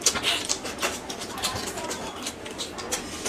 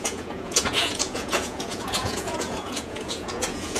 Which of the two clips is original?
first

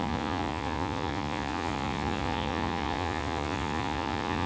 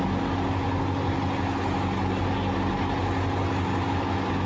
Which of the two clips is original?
second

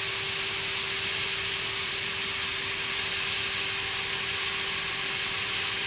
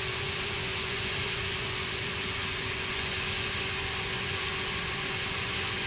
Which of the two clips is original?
first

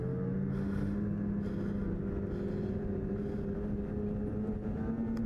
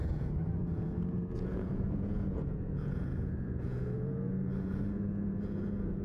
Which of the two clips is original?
first